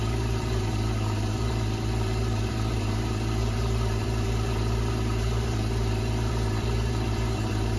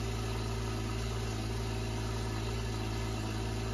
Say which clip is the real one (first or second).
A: second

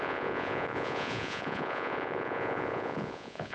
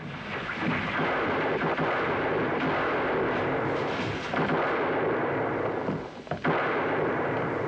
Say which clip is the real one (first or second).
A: second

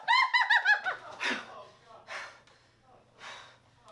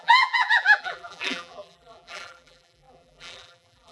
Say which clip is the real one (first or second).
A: first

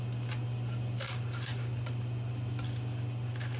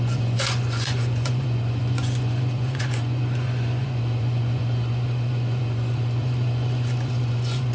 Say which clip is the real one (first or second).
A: first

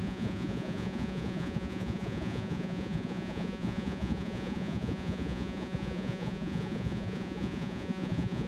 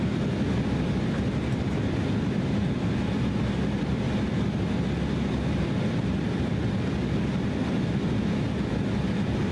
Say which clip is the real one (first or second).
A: second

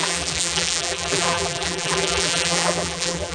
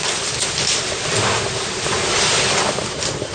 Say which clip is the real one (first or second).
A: second